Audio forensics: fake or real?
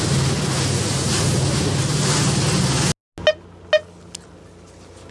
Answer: real